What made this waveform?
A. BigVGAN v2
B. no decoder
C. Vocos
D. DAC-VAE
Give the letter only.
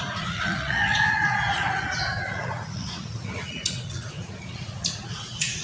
C